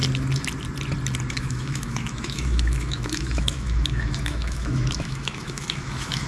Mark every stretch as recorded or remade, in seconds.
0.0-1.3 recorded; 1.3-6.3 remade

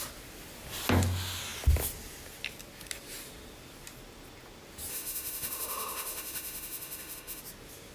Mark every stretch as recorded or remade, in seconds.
0.0-4.9 recorded; 4.9-7.4 remade; 7.4-7.9 recorded

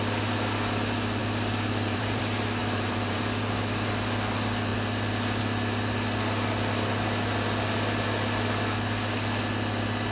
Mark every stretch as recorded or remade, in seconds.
0.0-1.2 recorded; 1.2-2.2 remade; 2.2-2.6 recorded; 2.6-3.2 remade; 3.2-10.1 recorded

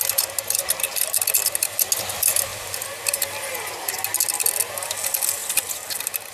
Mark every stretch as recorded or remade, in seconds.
0.0-6.3 recorded